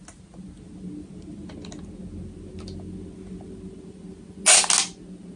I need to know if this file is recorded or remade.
recorded